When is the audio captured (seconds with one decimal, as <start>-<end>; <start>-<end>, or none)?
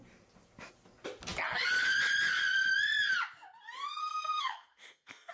0.0-4.0